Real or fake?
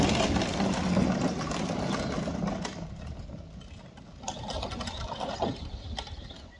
real